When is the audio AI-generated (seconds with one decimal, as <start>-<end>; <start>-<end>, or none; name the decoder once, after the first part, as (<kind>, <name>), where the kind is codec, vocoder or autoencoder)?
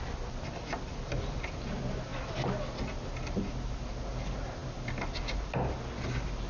none